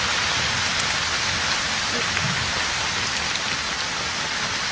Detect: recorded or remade recorded